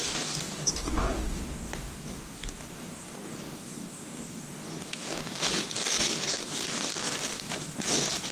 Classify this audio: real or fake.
fake